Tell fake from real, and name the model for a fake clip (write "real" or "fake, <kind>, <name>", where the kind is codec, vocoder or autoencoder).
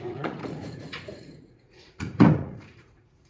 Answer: fake, vocoder, Vocos